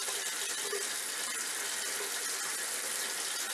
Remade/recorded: recorded